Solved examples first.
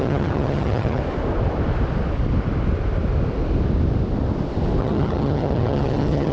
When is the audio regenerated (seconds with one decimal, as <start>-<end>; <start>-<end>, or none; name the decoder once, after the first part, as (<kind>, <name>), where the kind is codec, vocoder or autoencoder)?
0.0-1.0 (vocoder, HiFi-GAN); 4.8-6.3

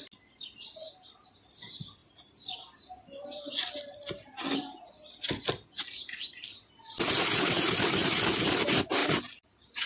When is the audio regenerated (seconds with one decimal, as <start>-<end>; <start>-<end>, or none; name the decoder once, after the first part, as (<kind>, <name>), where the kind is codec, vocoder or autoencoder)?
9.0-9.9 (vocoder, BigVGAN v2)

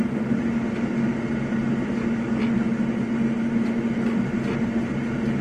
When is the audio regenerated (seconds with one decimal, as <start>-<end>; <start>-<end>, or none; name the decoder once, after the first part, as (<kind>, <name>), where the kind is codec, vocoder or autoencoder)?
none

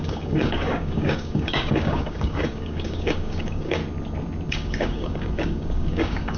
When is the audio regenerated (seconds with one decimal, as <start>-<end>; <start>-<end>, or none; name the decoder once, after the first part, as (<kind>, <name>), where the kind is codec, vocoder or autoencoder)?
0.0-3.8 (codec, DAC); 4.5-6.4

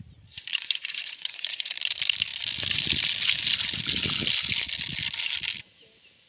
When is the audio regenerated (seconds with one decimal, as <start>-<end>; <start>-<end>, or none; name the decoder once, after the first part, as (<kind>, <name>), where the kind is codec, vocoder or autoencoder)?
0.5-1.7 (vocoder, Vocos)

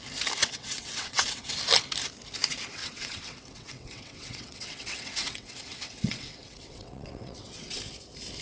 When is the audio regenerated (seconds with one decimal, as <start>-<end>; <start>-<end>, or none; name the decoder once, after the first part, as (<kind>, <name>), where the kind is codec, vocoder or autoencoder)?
0.4-1.5 (vocoder, WaveNeXt); 2.8-7.8